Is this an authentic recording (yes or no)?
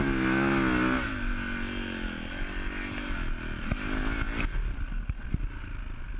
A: yes